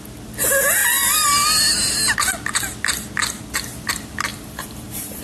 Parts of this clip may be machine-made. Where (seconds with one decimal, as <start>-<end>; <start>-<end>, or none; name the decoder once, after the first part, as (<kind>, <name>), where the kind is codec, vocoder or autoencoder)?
4.3-5.2 (vocoder, BigVGAN v2)